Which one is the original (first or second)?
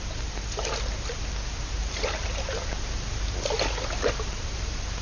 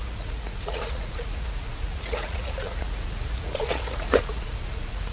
first